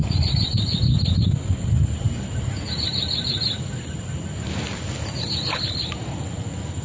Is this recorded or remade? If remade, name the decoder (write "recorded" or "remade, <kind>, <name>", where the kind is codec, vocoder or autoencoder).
recorded